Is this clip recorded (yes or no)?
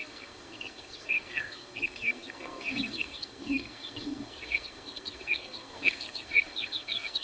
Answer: no